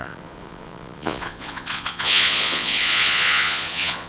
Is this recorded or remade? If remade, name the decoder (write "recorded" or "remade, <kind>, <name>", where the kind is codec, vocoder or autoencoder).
remade, vocoder, Vocos